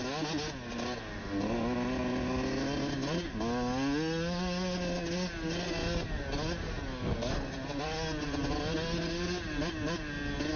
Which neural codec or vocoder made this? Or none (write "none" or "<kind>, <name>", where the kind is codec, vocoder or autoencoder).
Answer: none